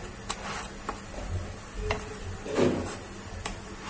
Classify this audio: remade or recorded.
recorded